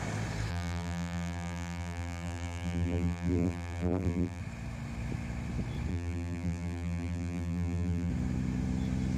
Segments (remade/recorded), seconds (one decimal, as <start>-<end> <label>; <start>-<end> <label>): 0.0-0.5 recorded; 0.5-4.4 remade; 4.4-5.9 recorded; 5.9-8.1 remade; 8.1-9.2 recorded